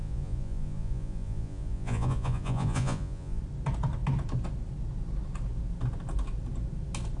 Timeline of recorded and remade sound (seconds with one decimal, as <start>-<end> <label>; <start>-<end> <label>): 0.0-3.4 remade; 3.4-7.2 recorded